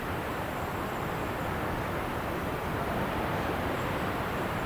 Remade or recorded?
recorded